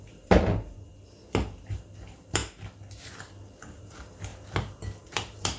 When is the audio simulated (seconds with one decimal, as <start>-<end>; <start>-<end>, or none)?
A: 0.0-0.9; 1.7-2.4; 3.6-4.3; 5.0-5.6